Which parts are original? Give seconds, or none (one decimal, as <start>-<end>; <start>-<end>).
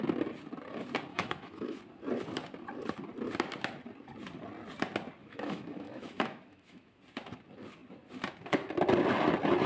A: 0.0-1.1; 1.8-5.2; 7.0-9.7